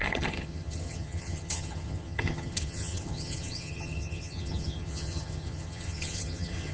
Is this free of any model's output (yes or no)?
no